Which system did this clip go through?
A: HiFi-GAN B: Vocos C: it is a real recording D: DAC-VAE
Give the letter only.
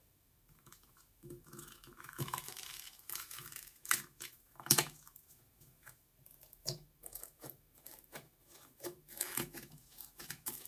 D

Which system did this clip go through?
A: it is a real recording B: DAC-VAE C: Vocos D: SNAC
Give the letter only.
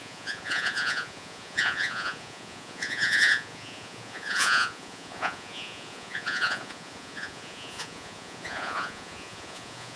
C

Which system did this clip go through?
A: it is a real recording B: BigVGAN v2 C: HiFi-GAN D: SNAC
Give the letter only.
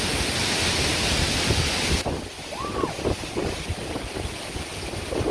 A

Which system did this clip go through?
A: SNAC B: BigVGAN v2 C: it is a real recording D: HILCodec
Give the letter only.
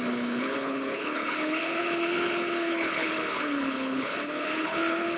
D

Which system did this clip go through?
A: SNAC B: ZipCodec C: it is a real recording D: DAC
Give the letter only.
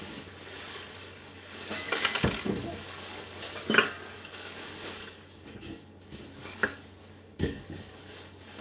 D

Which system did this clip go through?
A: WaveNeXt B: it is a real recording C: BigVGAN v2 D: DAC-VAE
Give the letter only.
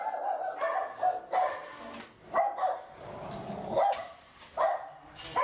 B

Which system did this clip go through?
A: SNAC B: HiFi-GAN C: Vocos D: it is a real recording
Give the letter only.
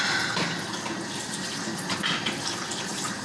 D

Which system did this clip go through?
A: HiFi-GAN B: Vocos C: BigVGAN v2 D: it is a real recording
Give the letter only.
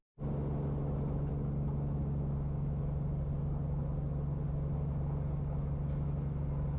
D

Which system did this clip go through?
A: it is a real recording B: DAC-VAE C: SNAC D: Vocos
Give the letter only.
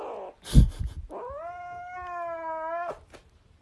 A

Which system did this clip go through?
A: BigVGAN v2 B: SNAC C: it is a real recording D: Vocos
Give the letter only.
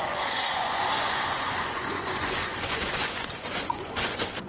D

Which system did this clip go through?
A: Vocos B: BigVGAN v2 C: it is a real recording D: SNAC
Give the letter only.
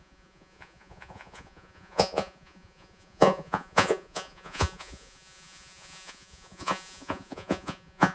A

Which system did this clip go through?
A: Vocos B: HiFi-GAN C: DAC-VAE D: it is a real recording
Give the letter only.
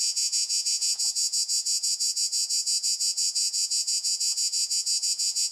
A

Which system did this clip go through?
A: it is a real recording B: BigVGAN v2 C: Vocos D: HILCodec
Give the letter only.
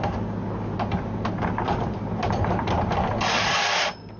A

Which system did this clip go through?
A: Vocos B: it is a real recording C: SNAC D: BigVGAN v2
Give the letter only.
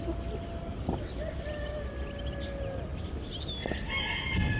B